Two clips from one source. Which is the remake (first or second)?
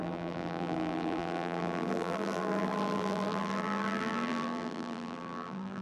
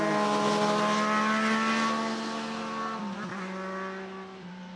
first